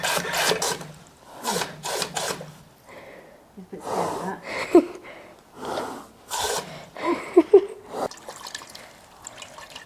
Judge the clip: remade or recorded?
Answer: recorded